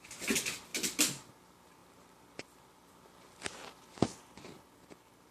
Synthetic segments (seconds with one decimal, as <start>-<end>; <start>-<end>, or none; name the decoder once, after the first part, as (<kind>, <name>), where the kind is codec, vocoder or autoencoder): none